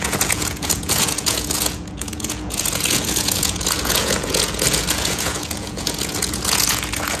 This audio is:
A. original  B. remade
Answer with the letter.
B